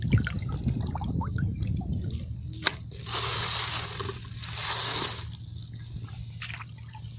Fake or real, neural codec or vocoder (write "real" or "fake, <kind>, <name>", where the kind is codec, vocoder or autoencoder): real